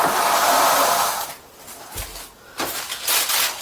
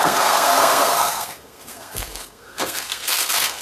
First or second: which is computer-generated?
second